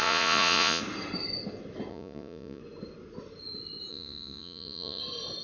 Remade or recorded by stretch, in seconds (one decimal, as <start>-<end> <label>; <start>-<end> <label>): 0.0-0.8 remade; 0.8-1.9 recorded; 1.9-2.6 remade; 2.6-3.9 recorded; 3.9-5.0 remade; 5.0-5.4 recorded